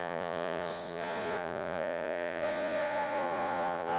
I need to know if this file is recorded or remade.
remade